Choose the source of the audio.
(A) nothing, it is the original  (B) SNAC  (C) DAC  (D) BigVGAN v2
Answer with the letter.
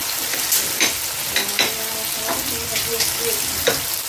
A